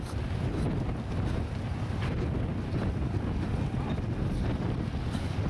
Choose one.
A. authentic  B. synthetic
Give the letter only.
A